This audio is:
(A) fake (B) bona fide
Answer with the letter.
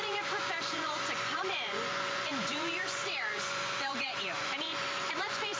A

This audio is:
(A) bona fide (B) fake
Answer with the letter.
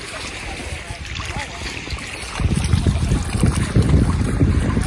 A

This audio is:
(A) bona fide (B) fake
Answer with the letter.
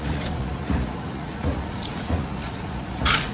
B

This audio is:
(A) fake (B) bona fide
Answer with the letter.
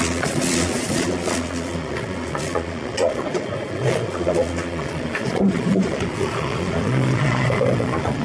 A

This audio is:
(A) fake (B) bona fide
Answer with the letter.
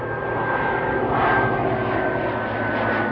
B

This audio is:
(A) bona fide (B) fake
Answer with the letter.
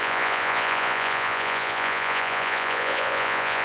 B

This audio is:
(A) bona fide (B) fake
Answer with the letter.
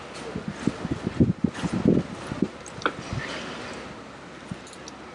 A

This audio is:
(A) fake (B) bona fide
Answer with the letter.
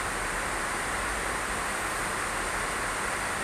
B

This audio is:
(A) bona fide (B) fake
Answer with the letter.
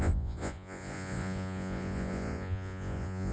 B